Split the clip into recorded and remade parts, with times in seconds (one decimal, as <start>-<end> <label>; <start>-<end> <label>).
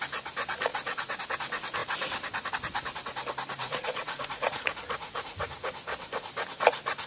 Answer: 0.0-0.7 recorded; 0.7-1.2 remade; 1.2-3.6 recorded; 3.6-5.7 remade; 5.7-7.1 recorded